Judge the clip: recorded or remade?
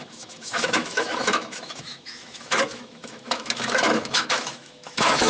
remade